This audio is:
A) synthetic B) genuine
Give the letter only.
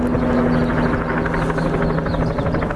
B